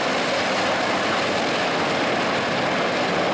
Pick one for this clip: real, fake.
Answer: real